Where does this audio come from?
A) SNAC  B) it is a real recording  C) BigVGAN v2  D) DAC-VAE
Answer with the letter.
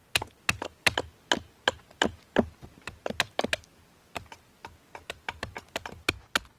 B